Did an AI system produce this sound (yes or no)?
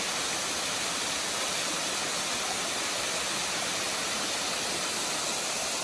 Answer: no